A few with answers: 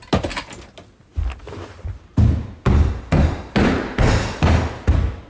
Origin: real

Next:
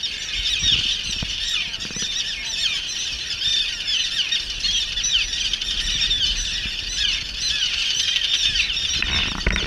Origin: fake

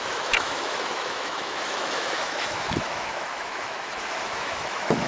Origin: fake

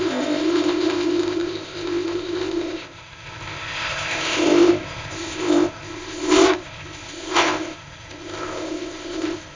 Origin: fake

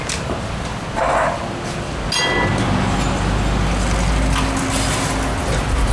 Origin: real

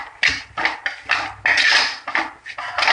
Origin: real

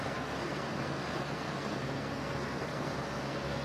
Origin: fake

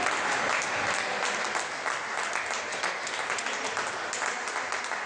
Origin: real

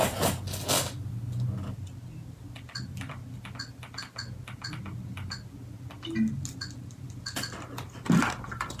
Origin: real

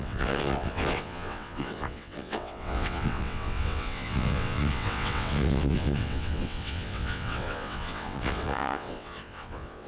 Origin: fake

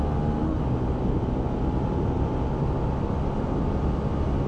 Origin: real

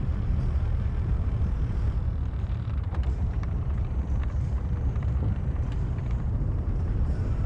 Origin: fake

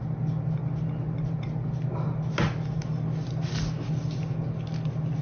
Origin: real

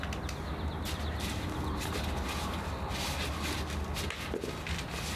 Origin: real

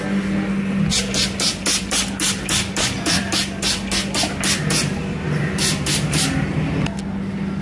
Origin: real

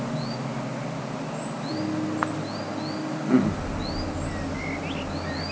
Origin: real